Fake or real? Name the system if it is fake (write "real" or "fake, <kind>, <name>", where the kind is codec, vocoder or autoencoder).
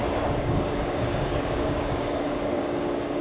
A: fake, codec, DAC